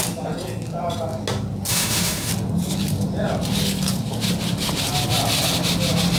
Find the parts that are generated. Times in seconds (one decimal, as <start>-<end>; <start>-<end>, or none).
1.7-2.3